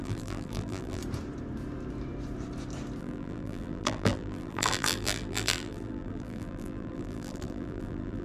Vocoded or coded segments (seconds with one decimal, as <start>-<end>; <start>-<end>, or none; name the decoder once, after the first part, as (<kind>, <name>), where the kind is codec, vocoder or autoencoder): 0.0-1.0 (vocoder, BigVGAN v2); 3.0-8.2